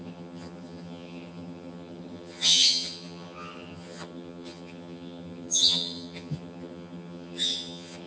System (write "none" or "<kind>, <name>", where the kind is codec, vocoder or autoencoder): vocoder, HiFi-GAN